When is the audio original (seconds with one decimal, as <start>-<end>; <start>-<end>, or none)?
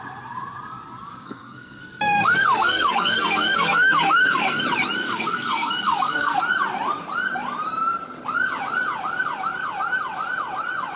0.0-1.1; 4.6-5.0; 6.4-11.0